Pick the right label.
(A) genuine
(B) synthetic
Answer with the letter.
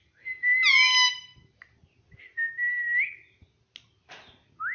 A